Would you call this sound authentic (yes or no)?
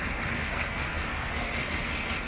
no